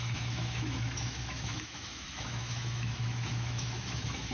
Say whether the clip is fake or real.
fake